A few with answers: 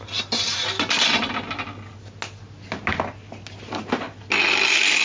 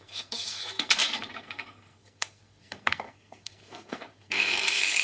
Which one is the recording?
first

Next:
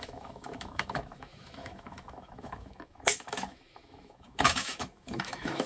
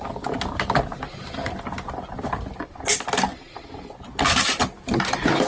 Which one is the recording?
second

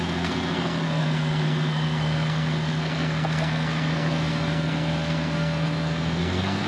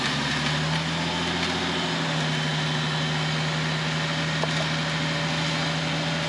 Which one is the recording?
second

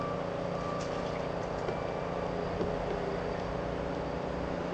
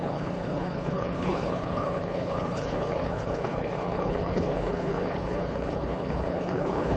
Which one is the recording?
first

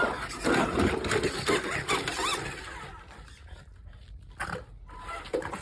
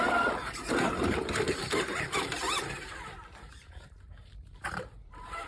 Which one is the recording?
first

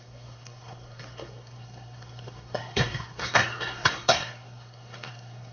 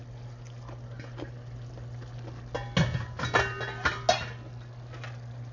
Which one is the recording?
second